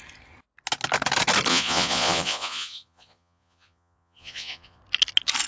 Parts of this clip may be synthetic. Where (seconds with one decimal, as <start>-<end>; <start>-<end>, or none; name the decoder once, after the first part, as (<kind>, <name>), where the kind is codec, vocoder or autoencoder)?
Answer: 1.5-4.8 (vocoder, Vocos)